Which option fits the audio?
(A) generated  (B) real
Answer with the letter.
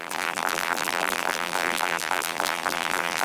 A